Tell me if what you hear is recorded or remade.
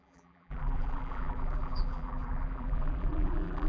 remade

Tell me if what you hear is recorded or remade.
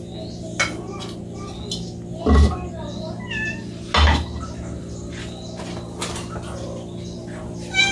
recorded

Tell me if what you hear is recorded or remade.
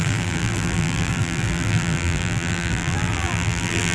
remade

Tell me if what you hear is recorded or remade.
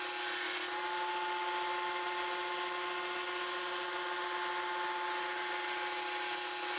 recorded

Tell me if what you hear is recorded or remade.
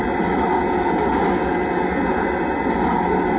recorded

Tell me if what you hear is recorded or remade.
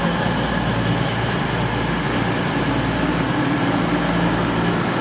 recorded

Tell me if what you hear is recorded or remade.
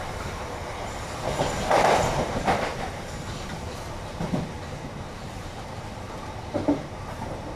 remade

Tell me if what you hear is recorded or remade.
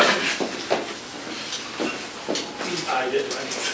recorded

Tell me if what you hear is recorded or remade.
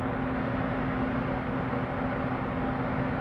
recorded